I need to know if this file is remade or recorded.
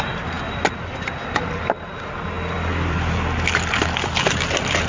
recorded